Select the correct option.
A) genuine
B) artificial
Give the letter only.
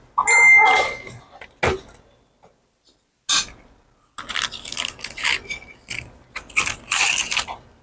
A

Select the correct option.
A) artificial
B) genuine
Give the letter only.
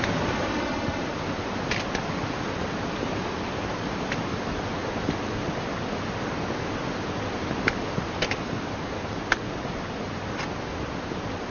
B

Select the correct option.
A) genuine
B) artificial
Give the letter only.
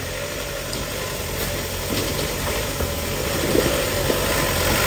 A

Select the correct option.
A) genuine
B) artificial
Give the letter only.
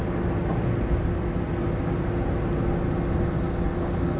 A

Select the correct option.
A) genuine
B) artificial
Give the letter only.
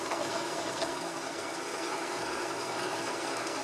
B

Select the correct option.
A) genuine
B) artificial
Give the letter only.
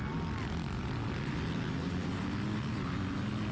A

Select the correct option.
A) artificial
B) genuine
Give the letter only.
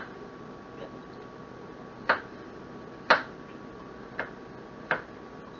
B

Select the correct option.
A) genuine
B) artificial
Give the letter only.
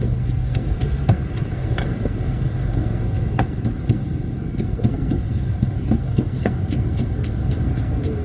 B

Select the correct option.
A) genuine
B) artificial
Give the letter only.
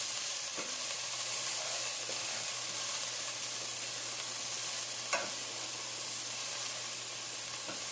A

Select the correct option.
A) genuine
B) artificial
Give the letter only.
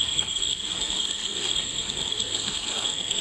B